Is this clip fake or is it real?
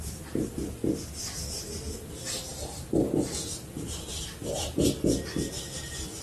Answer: real